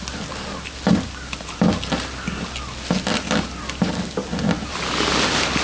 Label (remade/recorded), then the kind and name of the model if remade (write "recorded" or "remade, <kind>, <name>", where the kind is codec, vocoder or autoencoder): recorded